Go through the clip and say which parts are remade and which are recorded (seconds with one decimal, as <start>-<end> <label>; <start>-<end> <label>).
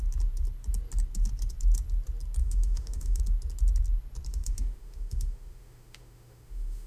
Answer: 0.0-2.4 recorded; 2.4-3.2 remade; 3.2-4.3 recorded; 4.3-6.9 remade